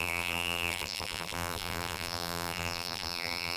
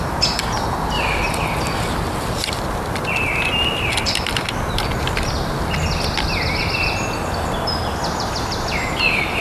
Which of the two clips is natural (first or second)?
second